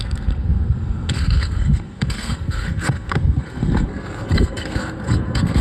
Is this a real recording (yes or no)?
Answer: no